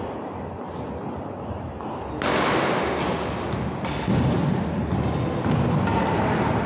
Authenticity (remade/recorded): recorded